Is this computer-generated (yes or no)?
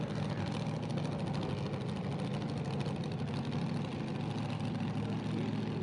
no